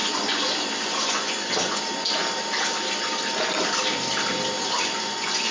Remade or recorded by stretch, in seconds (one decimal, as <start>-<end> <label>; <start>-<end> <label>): 0.0-1.8 remade; 1.8-4.6 recorded; 4.6-5.5 remade